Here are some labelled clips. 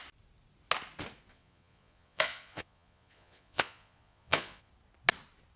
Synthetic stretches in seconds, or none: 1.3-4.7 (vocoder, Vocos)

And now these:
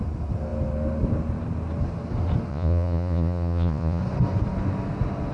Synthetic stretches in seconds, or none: 2.5-4.0 (vocoder, Vocos)

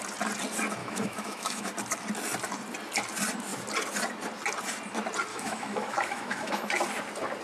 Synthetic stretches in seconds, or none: 0.8-1.7 (autoencoder, DAC-VAE); 5.3-6.7

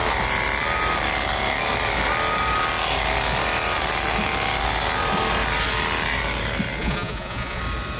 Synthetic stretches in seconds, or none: 6.8-7.6 (vocoder, Vocos)

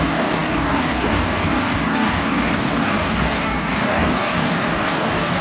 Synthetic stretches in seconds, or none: 0.0-5.4 (codec, DAC)